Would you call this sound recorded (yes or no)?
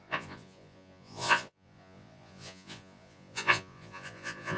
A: no